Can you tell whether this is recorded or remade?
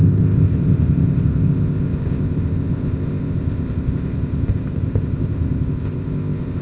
remade